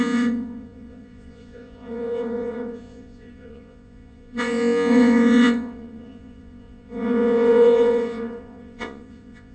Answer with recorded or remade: remade